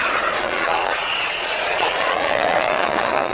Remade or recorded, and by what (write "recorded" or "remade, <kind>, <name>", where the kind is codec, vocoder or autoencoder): remade, vocoder, Vocos